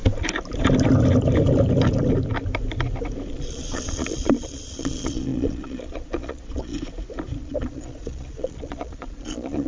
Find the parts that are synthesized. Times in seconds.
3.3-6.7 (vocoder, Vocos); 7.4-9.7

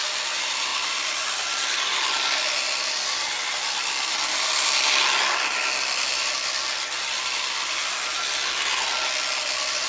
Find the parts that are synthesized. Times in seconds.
none